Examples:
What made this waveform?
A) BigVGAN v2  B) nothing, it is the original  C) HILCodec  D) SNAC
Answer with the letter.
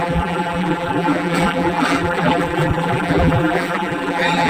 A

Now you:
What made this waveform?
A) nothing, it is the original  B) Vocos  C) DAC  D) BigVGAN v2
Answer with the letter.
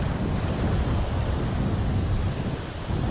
D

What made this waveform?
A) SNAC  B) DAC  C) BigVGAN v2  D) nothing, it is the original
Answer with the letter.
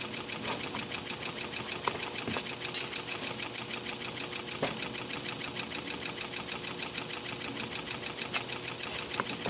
D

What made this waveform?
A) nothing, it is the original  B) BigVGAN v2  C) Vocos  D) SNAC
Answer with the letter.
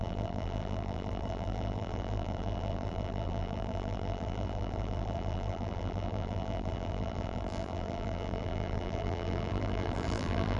B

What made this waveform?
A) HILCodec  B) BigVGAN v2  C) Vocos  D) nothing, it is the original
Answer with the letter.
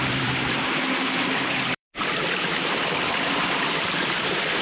B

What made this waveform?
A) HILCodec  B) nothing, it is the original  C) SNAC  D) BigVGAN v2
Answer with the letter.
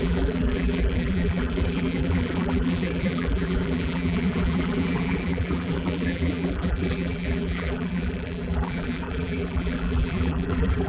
D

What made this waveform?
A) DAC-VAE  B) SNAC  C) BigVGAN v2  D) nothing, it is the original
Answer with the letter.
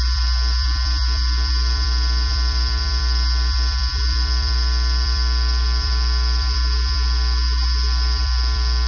C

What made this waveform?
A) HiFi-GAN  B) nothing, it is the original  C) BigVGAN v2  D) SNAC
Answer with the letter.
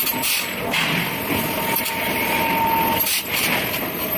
B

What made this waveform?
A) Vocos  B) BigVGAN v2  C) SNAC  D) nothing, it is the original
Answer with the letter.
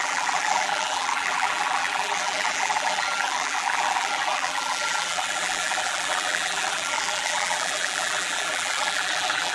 B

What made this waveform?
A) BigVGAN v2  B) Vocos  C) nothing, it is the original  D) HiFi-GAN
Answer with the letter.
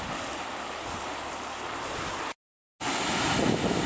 C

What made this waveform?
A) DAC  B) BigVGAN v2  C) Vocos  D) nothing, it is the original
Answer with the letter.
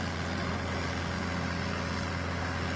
D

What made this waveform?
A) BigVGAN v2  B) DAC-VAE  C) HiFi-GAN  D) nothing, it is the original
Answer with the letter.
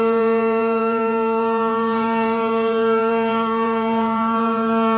A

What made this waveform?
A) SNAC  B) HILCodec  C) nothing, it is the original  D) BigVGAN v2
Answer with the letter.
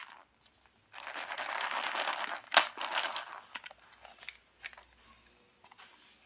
C